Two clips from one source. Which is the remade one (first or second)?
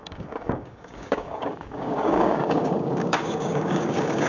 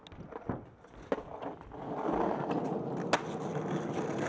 first